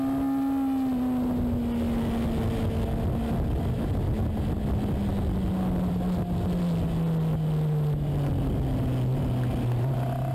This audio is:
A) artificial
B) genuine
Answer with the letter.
B